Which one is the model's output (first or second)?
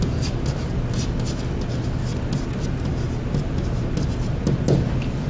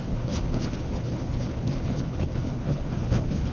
second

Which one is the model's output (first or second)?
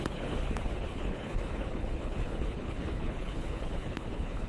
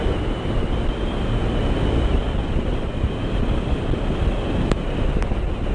first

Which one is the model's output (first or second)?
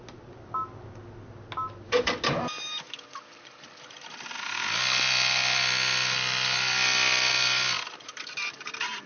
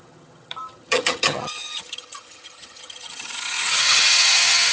second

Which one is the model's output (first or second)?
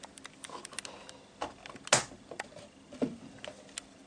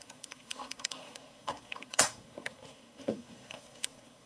second